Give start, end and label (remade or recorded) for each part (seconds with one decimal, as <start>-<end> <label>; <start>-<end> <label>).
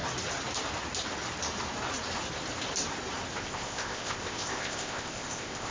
0.0-3.4 recorded; 3.4-5.7 remade